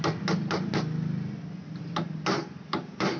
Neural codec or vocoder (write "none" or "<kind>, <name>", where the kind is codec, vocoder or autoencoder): none